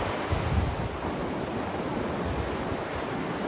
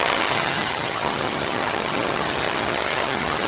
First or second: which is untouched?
first